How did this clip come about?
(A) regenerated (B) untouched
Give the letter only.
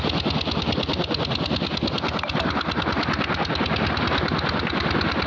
B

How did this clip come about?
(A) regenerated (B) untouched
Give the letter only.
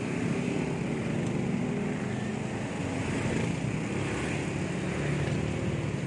B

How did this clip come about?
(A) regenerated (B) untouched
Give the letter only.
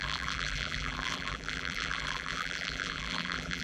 A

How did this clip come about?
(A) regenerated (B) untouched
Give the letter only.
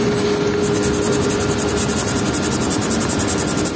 B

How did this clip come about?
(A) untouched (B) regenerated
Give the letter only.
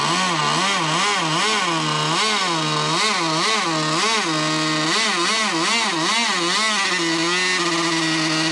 A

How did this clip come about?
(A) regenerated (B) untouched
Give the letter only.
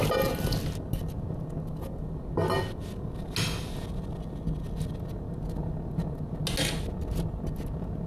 B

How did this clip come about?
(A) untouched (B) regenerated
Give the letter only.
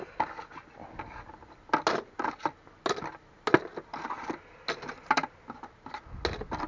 A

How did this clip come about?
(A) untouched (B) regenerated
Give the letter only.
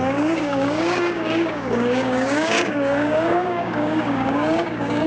B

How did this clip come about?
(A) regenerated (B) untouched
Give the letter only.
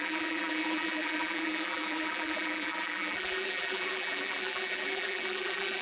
A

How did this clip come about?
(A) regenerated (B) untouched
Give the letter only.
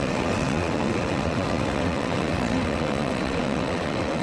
A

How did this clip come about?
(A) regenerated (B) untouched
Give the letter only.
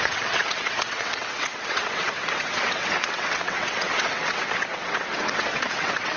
A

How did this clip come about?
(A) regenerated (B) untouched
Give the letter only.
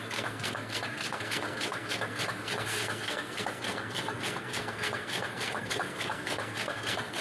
A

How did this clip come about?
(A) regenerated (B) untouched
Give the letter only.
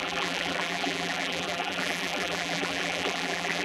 A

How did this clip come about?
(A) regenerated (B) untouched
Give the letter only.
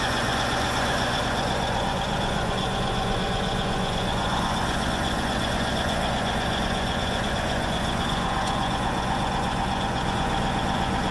A